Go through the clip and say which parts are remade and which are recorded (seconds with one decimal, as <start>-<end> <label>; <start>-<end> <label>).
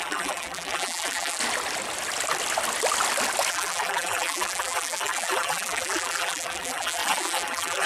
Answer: 0.0-1.4 remade; 1.4-3.5 recorded; 3.5-7.9 remade